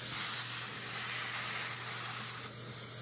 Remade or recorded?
recorded